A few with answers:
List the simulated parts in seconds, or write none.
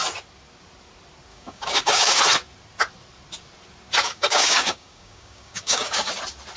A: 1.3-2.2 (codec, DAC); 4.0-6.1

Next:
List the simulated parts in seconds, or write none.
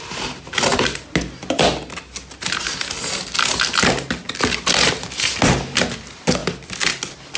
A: none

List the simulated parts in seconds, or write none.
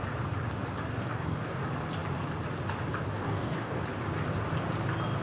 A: 0.9-1.6 (codec, DAC); 3.1-3.8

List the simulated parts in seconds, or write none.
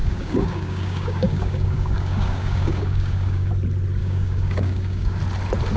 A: 0.0-3.5 (codec, DAC); 4.0-5.2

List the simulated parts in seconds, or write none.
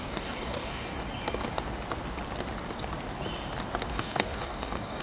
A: 0.0-0.9 (codec, DAC); 3.9-5.0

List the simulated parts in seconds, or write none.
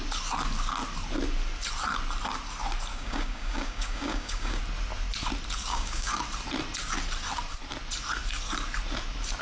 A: 2.9-4.6 (codec, DAC); 5.6-6.1